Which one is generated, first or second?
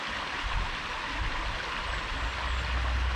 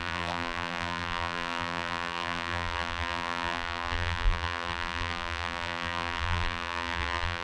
second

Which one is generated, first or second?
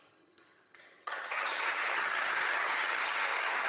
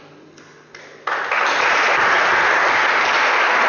first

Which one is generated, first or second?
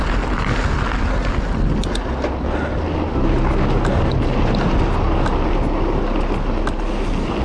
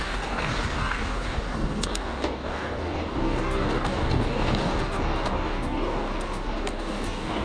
second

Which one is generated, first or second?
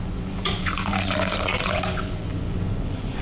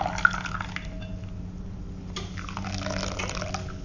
first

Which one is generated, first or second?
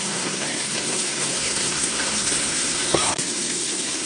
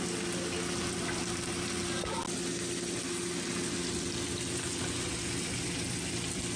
first